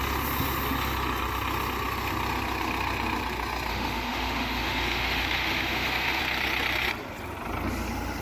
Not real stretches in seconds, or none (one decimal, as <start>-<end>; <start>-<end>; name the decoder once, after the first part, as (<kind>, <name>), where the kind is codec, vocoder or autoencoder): 3.7-6.2 (autoencoder, DAC-VAE)